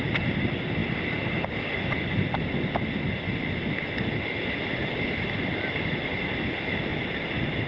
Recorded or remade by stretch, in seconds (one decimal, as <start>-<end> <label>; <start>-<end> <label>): 0.0-7.7 recorded